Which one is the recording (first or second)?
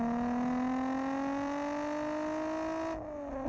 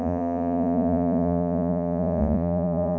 first